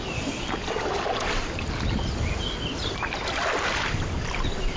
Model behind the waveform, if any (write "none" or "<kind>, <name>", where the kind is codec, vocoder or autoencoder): none